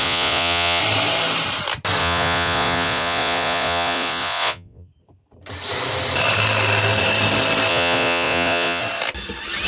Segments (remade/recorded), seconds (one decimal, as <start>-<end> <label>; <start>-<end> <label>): 0.0-0.8 remade; 0.8-2.0 recorded; 2.0-4.9 remade; 4.9-7.7 recorded; 7.7-8.8 remade; 8.8-9.7 recorded